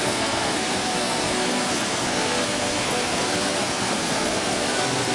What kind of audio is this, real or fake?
fake